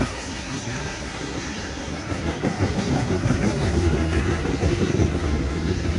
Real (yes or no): no